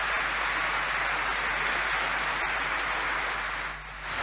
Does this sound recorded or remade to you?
recorded